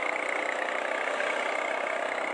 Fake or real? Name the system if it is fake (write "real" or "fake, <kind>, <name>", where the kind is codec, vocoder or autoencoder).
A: real